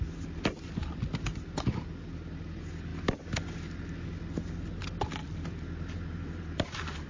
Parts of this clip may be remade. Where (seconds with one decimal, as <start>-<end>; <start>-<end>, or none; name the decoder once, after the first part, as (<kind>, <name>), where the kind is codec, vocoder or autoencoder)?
0.8-2.1 (vocoder, BigVGAN v2); 5.2-7.1